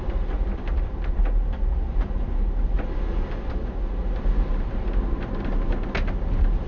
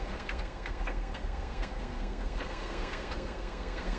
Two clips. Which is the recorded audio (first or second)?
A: first